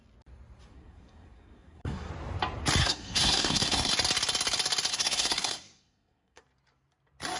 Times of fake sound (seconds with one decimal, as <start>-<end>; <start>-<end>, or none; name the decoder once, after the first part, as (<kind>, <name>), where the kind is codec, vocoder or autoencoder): 0.7-2.1 (codec, SNAC); 2.8-3.9; 4.9-6.4